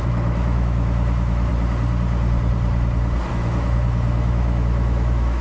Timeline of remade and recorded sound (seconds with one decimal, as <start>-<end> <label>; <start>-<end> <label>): 0.0-1.5 remade; 1.5-3.3 recorded; 3.3-5.4 remade